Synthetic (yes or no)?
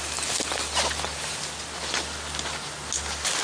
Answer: no